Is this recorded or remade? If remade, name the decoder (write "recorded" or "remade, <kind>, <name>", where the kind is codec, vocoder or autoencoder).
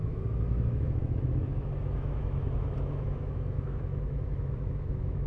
remade, autoencoder, DAC-VAE